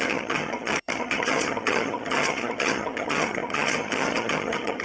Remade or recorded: remade